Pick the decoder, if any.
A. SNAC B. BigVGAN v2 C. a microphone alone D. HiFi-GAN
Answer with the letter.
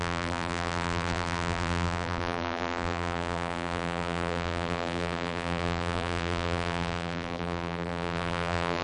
B